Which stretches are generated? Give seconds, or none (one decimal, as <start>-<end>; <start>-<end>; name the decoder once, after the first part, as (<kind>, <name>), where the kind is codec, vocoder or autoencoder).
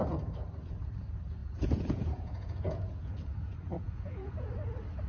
1.4-4.5 (vocoder, Vocos)